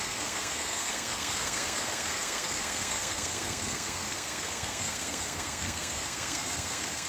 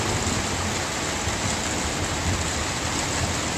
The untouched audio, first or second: second